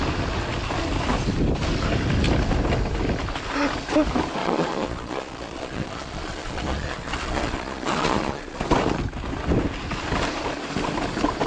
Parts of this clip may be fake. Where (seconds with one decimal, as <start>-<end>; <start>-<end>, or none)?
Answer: 4.4-8.6